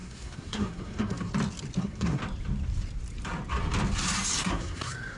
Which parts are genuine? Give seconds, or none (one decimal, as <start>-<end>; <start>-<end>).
1.3-1.8; 2.2-4.4